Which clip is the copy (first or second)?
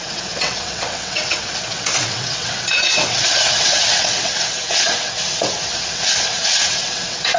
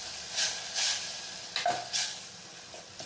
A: first